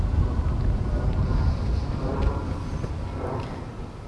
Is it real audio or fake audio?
real